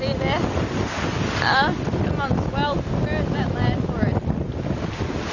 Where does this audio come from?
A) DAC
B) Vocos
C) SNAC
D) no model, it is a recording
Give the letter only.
D